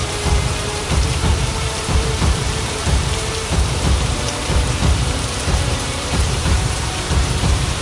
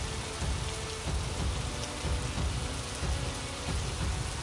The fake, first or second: first